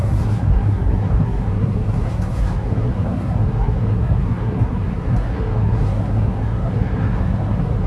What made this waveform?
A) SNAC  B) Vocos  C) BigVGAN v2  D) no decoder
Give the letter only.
A